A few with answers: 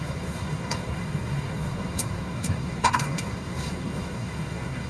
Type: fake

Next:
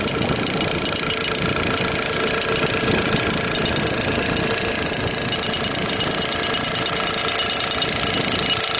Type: real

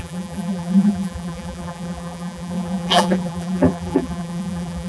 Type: fake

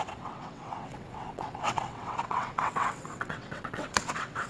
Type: fake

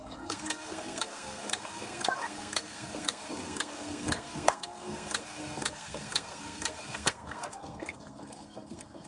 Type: fake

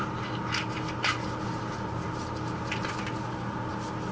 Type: real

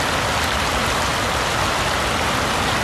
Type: real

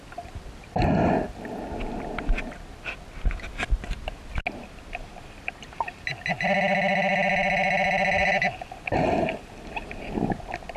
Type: real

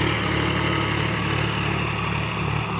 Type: real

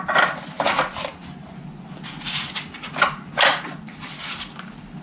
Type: real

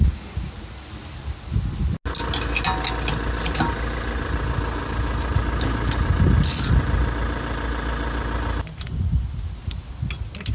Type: real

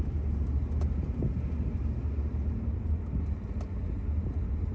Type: real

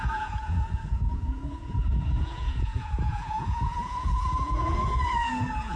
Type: fake